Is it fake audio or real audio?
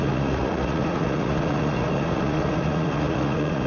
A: fake